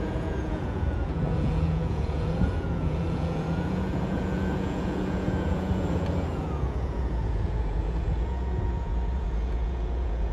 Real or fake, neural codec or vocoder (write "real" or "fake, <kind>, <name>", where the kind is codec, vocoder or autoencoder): fake, vocoder, Vocos